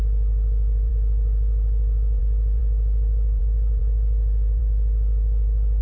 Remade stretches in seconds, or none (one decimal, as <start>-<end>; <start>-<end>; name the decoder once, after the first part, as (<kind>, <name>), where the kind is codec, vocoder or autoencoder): 0.9-2.2 (autoencoder, DAC-VAE); 2.6-3.4; 3.8-4.6